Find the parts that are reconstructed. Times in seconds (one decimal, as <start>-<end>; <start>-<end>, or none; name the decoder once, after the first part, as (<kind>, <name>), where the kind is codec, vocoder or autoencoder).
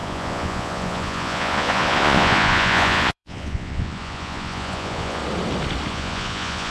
0.0-5.2 (vocoder, Vocos); 5.9-6.7